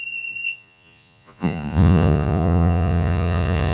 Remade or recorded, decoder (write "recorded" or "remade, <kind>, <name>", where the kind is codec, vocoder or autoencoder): remade, vocoder, Vocos